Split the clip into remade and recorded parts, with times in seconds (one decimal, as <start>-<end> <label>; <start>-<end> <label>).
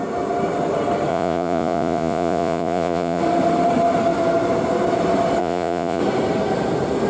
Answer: 0.0-1.1 recorded; 1.1-3.2 remade; 3.2-5.4 recorded; 5.4-6.0 remade; 6.0-7.1 recorded